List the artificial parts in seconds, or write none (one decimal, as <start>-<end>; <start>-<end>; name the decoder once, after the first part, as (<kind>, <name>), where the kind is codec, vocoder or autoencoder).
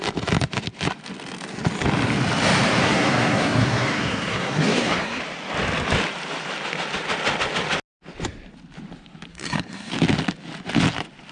2.8-5.2 (codec, SNAC); 9.3-9.9